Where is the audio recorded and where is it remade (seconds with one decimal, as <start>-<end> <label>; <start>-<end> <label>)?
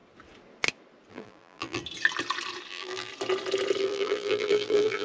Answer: 0.0-1.1 recorded; 1.1-1.8 remade; 1.8-2.7 recorded; 2.7-3.1 remade; 3.1-3.8 recorded; 3.8-5.0 remade